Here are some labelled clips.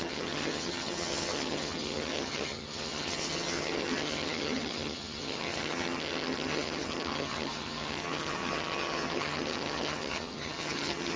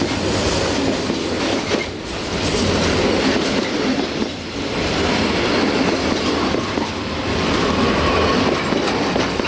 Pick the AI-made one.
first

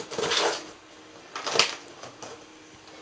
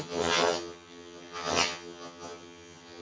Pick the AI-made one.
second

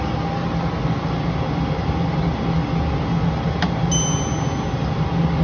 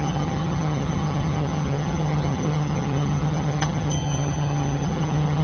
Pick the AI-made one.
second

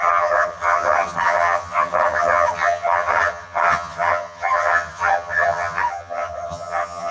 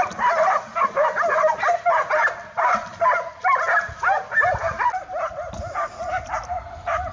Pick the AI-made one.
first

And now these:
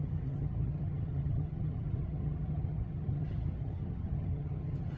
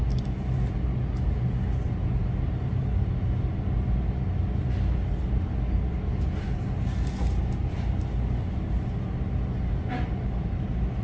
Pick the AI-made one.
first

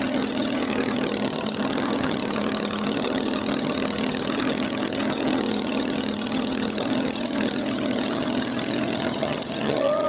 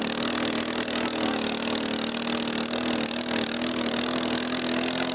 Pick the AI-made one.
first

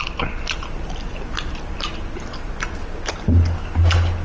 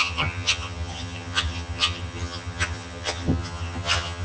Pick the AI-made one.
second